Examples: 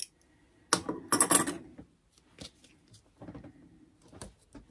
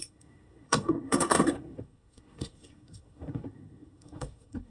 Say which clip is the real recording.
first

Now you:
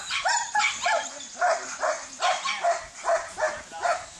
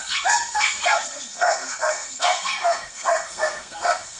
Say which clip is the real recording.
first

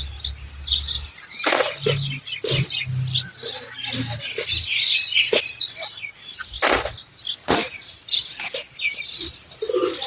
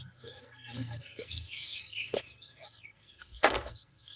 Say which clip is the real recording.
first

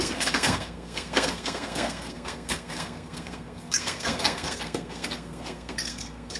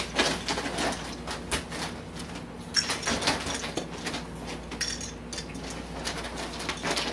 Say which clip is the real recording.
second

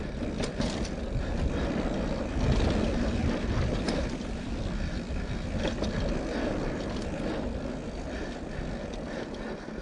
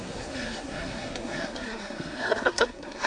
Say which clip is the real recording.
first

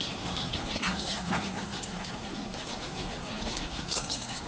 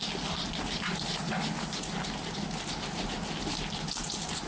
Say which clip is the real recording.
second